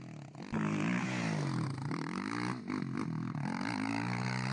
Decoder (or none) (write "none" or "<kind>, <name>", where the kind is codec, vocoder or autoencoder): none